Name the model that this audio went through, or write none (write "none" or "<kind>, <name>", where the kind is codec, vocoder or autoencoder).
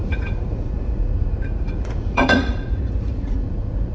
vocoder, Vocos